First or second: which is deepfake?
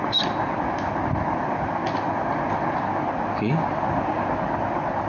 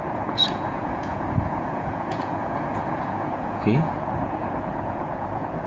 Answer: second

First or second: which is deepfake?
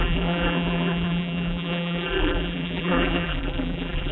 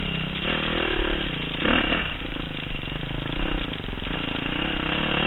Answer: first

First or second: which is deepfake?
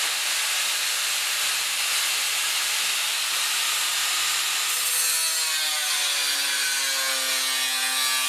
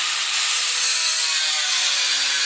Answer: second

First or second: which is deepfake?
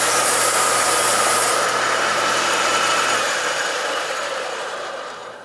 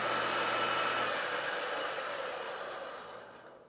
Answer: first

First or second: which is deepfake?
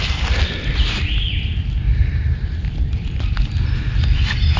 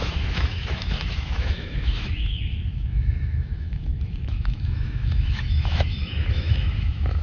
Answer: second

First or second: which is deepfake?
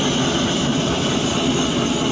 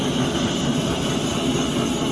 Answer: first